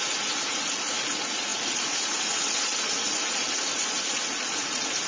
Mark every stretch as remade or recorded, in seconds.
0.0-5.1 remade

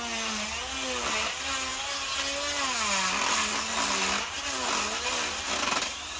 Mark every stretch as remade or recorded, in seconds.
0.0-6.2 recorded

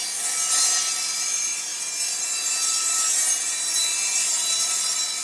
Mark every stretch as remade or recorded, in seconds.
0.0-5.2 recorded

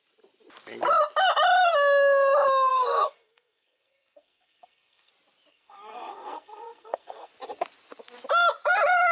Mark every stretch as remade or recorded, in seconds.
0.0-2.7 recorded; 2.7-5.1 remade; 5.1-5.5 recorded; 5.5-7.3 remade; 7.3-9.1 recorded

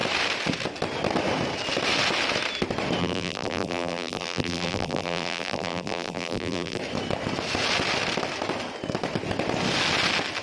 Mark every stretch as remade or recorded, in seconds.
0.0-3.0 recorded; 3.0-6.8 remade; 6.8-10.4 recorded

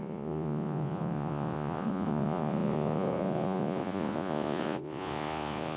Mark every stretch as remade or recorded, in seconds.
0.0-5.8 remade

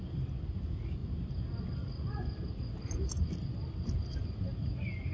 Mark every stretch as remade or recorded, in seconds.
0.0-5.1 recorded

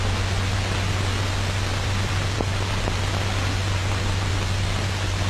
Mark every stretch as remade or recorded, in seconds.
0.0-1.7 recorded; 1.7-2.8 remade; 2.8-3.8 recorded; 3.8-4.3 remade; 4.3-5.3 recorded